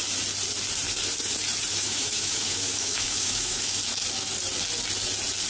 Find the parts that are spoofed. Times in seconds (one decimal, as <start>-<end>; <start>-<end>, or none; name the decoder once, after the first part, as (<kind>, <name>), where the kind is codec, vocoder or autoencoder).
1.7-3.8 (autoencoder, DAC-VAE)